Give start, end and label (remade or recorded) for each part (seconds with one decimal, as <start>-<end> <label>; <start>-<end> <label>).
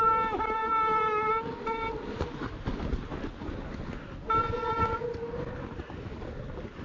0.0-6.8 recorded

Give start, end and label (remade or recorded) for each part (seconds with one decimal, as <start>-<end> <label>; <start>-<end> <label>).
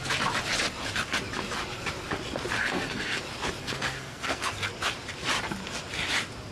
0.0-2.6 recorded; 2.6-3.2 remade; 3.2-3.6 recorded; 3.6-4.5 remade; 4.5-6.5 recorded